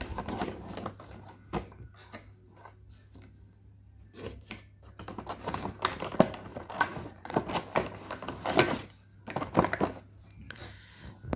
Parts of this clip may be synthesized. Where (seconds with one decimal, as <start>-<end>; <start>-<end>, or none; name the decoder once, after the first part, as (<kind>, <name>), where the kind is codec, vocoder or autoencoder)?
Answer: 6.5-7.5 (vocoder, Vocos)